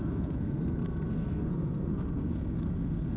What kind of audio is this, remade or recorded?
remade